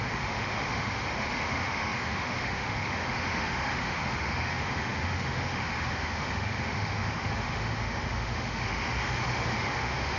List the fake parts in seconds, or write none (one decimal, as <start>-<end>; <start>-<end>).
0.0-10.2